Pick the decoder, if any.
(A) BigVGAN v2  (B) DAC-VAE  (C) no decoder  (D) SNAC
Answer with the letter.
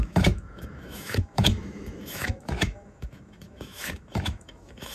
B